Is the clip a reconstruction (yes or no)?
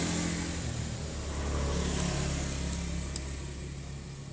no